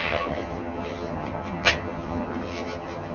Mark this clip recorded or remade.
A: remade